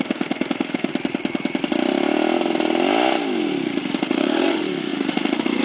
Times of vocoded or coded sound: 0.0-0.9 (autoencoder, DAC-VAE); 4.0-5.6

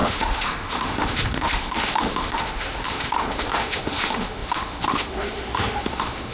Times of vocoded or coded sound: 0.0-6.3 (autoencoder, DAC-VAE)

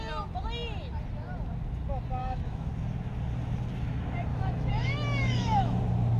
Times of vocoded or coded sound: 2.2-2.7 (autoencoder, DAC-VAE); 4.3-5.8

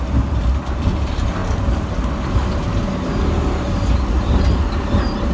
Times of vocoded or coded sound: none

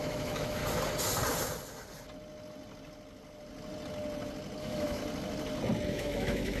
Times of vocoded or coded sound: 0.0-0.6 (autoencoder, DAC-VAE); 4.6-5.0; 5.9-6.6

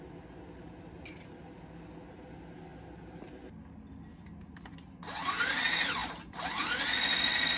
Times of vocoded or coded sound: none

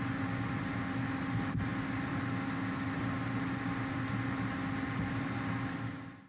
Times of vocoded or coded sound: none